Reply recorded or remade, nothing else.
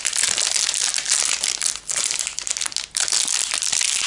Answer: recorded